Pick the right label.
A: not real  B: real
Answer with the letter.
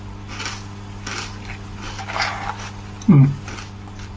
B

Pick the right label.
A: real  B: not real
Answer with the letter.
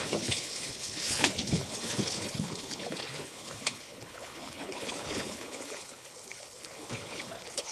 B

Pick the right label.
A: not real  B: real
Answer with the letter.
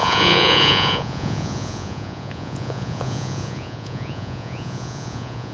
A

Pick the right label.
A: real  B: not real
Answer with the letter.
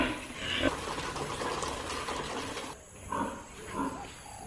A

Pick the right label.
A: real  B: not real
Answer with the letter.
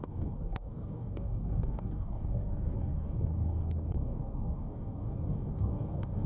B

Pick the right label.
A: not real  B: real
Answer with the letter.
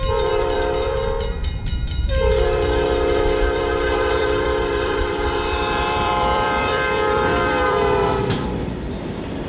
A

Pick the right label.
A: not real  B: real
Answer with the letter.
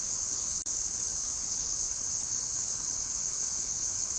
A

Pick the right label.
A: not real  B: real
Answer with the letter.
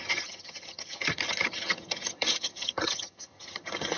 A